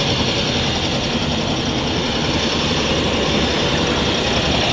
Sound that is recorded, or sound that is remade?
recorded